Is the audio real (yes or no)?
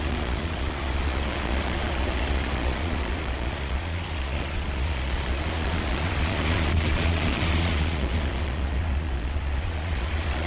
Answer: no